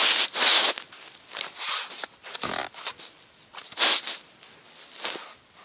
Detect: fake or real fake